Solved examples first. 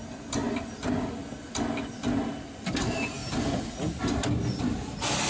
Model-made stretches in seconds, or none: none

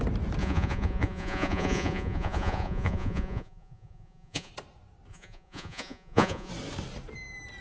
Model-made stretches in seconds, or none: 0.4-4.5 (vocoder, Vocos); 5.1-6.5

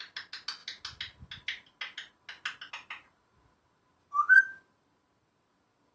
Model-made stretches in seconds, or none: none